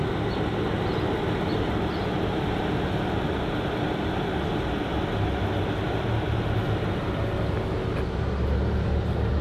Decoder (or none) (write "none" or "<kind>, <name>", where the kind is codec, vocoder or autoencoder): none